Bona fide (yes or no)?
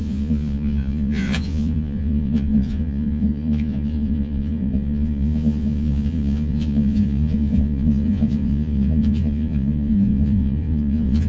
no